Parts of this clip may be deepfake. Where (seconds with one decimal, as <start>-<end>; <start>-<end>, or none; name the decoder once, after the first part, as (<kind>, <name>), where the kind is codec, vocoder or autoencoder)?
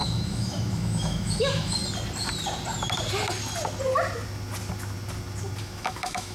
0.0-1.8 (autoencoder, DAC-VAE); 5.6-6.3